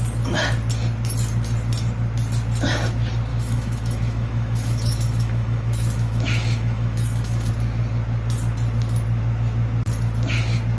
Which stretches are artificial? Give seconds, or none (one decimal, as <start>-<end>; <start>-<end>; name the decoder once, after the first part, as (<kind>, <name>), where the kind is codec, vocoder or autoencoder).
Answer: 3.3-7.5 (autoencoder, DAC-VAE)